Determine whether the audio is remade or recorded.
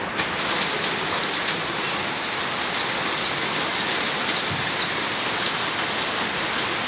recorded